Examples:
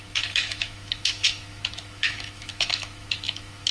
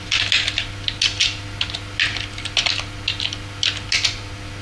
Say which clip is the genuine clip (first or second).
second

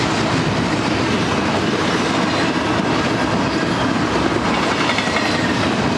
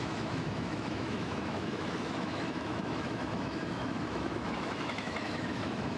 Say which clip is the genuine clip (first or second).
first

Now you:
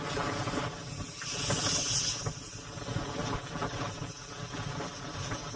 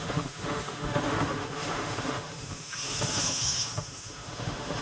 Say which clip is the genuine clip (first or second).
first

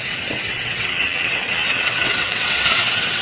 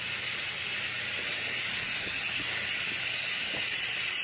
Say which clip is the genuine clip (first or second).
second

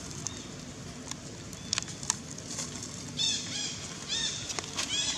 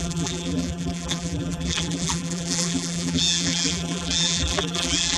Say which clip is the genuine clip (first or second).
first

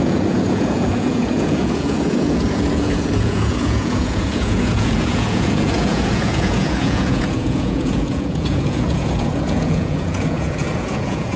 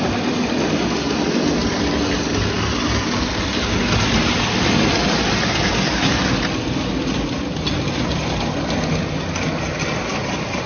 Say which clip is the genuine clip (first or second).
second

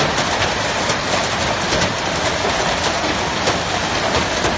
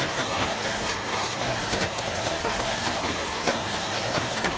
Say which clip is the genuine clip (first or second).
first